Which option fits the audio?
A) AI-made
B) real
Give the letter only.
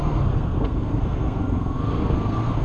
A